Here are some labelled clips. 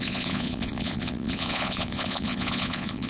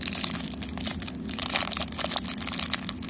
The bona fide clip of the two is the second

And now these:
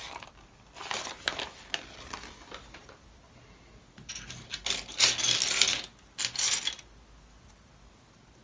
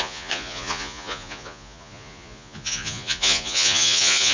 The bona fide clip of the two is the first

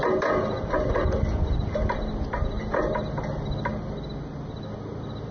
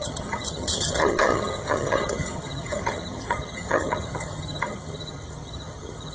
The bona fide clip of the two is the first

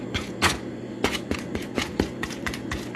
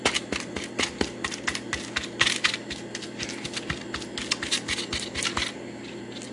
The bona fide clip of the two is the second